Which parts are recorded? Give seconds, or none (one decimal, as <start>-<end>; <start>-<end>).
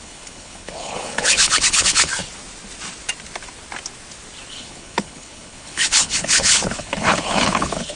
2.2-4.5